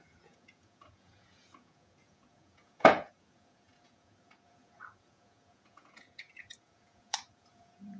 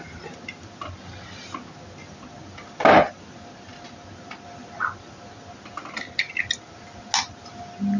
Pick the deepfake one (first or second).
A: first